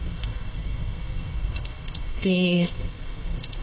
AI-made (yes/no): yes